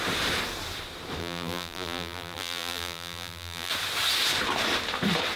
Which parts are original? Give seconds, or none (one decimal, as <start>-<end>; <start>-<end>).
0.0-1.2; 3.7-5.4